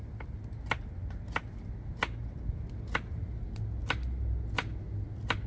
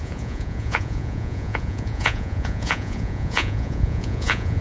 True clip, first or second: first